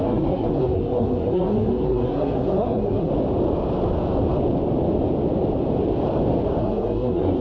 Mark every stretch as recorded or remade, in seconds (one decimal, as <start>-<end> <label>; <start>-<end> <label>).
0.0-3.1 remade; 3.1-6.6 recorded; 6.6-7.4 remade